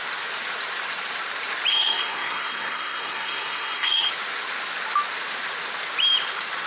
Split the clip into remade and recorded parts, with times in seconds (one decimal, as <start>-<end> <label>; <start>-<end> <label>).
0.0-1.7 recorded; 1.7-4.1 remade; 4.1-6.7 recorded